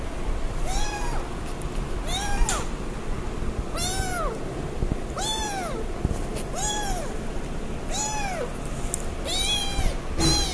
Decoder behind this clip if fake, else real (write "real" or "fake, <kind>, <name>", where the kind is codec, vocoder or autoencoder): real